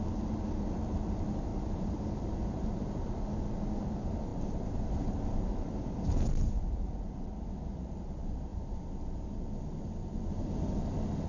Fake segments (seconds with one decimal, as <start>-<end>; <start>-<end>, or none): 1.5-3.1; 4.3-7.5; 8.5-9.4